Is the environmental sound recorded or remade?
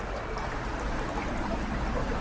recorded